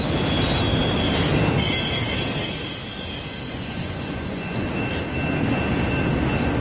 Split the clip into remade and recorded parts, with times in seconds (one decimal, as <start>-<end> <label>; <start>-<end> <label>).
0.0-3.5 recorded; 3.5-4.7 remade; 4.7-6.6 recorded